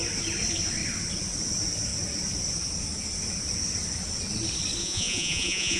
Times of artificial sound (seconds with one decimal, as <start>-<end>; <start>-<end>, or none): 4.8-5.8